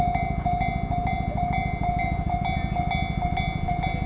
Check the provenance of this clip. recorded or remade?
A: recorded